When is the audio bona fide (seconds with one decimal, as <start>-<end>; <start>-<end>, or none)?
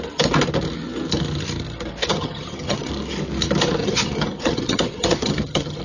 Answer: 0.0-2.1; 2.9-3.8